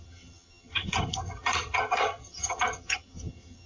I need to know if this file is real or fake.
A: fake